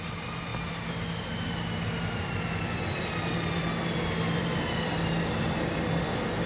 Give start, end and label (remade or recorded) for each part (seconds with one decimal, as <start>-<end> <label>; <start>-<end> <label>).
0.0-6.5 recorded